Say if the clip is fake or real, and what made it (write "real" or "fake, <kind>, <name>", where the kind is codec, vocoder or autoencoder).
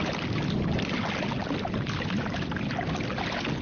real